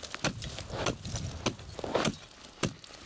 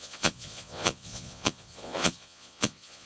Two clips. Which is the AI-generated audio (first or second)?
second